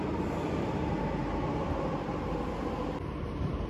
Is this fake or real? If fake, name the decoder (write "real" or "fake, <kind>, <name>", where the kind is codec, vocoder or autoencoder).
real